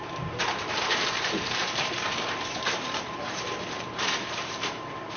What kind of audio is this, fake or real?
fake